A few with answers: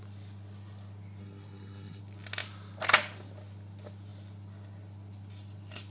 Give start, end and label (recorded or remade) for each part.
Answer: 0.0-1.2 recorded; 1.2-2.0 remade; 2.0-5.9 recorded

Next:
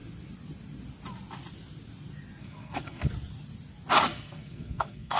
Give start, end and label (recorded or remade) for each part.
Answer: 0.0-2.4 recorded; 2.4-3.1 remade; 3.1-4.1 recorded; 4.1-5.2 remade

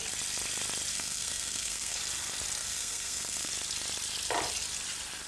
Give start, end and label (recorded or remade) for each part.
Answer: 0.0-0.9 recorded; 0.9-2.0 remade; 2.0-2.6 recorded; 2.6-3.5 remade; 3.5-5.3 recorded

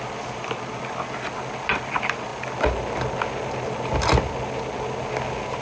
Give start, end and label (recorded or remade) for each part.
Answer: 0.0-5.6 recorded

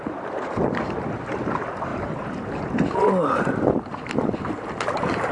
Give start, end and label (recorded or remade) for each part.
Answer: 0.0-5.3 recorded

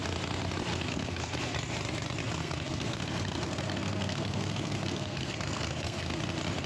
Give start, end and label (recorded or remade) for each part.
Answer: 0.0-0.7 recorded; 0.7-1.3 remade; 1.3-2.2 recorded; 2.2-6.2 remade; 6.2-6.7 recorded